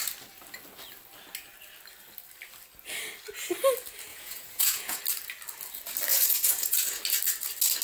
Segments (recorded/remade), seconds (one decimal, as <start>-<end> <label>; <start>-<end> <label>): 0.0-4.1 recorded; 4.1-5.0 remade; 5.0-6.1 recorded; 6.1-7.0 remade; 7.0-7.8 recorded